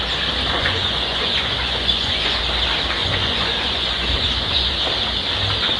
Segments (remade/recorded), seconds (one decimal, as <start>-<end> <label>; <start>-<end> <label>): 0.0-0.6 recorded; 0.6-2.4 remade; 2.4-3.0 recorded; 3.0-4.7 remade; 4.7-5.8 recorded